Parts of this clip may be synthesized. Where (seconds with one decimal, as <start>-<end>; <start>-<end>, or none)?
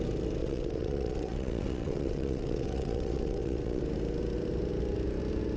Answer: 0.4-3.8